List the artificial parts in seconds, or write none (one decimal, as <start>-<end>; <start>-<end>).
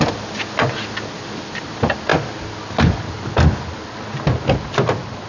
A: none